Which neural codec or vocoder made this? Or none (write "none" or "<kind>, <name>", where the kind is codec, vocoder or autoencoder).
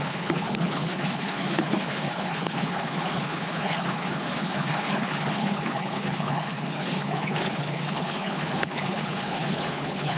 codec, HILCodec